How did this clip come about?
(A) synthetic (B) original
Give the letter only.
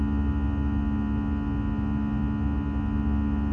B